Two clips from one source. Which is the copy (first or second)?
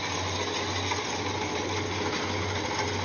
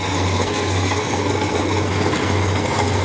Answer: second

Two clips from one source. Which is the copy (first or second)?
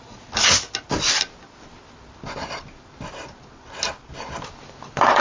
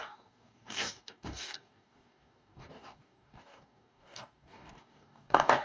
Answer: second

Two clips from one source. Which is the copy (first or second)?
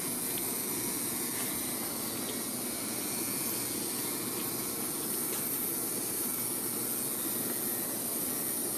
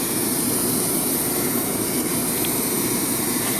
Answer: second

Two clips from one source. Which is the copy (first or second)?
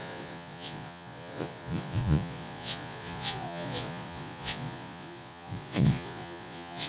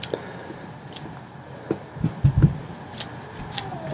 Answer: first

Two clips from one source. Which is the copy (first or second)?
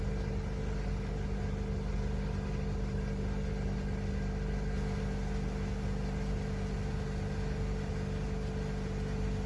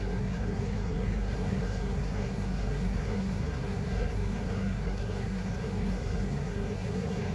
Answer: second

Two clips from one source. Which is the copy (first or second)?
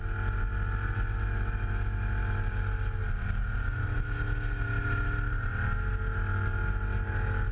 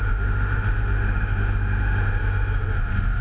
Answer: second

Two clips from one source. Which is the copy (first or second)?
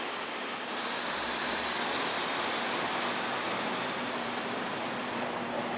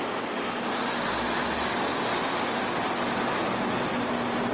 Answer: first